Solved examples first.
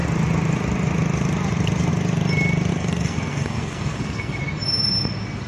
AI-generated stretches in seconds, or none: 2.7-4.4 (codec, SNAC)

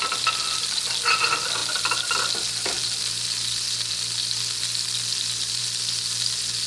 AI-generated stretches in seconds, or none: none

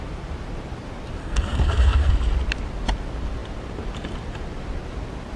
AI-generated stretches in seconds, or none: 1.2-2.1 (codec, SNAC)

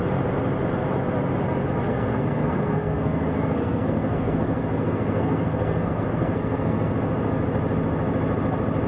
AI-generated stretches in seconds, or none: 1.9-6.9 (codec, SNAC)